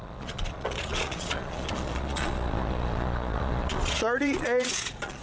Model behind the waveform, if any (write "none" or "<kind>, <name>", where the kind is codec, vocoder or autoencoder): vocoder, Vocos